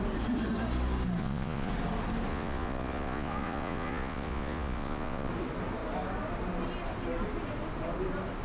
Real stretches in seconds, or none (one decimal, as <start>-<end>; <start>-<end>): 0.0-1.2; 1.7-2.3; 5.3-8.4